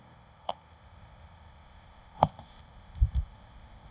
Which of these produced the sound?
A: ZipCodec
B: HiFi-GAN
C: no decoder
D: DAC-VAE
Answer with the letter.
A